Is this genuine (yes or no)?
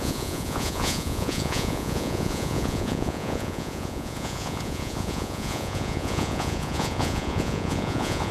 no